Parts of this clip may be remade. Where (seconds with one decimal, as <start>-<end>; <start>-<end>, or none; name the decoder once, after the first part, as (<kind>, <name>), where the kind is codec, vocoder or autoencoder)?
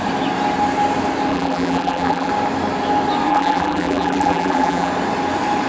1.3-2.3 (vocoder, BigVGAN v2); 3.3-4.9